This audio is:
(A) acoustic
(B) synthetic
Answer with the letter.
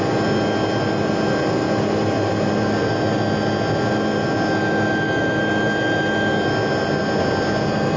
A